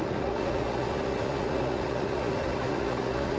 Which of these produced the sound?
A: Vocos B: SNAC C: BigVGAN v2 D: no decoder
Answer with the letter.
A